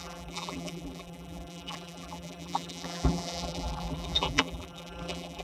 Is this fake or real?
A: fake